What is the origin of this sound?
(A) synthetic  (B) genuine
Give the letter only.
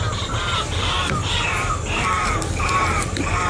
B